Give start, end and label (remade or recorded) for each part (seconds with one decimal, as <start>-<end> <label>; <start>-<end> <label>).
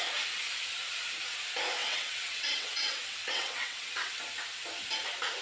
0.0-1.8 recorded; 1.8-4.2 remade; 4.2-5.4 recorded